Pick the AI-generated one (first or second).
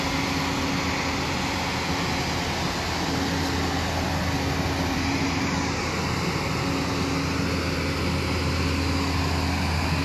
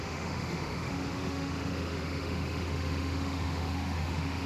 second